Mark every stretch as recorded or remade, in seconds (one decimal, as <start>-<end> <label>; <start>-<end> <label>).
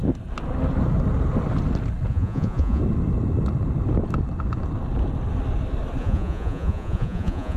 0.0-2.1 recorded; 2.1-2.8 remade; 2.8-6.0 recorded; 6.0-7.6 remade